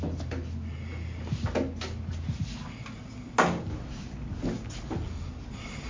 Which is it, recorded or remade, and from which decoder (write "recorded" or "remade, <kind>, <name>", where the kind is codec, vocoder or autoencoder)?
recorded